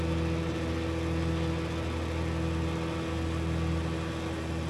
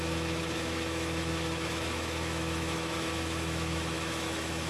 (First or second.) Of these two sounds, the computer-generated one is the second